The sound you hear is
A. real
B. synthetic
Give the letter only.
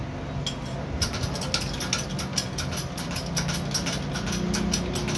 A